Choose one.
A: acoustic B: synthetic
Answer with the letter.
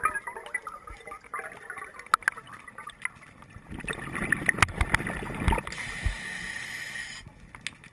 A